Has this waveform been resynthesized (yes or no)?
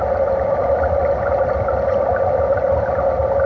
no